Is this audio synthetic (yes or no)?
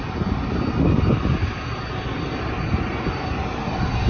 no